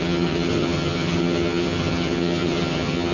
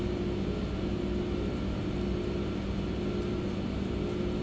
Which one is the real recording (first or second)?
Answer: second